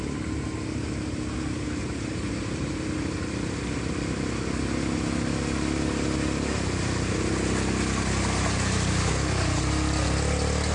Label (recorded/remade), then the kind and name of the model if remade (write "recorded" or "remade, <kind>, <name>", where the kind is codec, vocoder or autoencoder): recorded